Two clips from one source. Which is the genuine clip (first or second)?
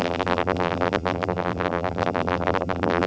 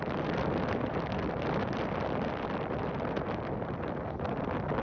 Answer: second